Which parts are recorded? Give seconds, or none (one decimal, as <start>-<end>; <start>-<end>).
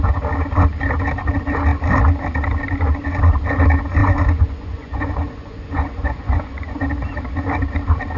0.0-4.0; 6.9-8.2